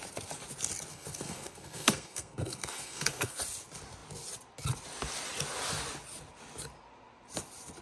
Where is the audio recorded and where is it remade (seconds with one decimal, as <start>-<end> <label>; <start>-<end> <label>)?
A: 0.0-0.9 recorded; 0.9-3.4 remade; 3.4-7.8 recorded